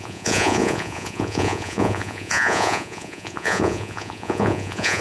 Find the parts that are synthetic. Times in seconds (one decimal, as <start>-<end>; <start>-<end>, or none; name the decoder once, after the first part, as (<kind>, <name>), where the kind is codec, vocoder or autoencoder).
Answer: 0.0-5.0 (vocoder, Vocos)

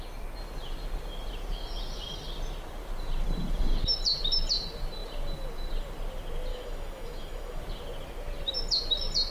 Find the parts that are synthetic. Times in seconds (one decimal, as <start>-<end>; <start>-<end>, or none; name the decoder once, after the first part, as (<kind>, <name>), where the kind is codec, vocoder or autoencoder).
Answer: 6.5-7.6 (autoencoder, DAC-VAE)